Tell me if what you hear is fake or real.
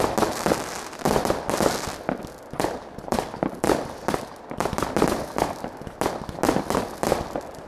real